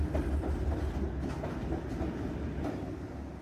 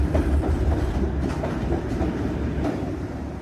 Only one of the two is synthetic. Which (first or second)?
second